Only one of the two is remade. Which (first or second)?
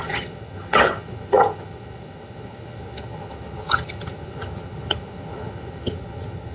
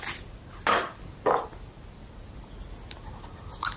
first